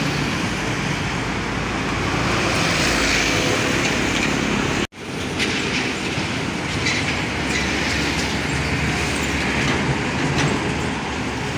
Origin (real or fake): real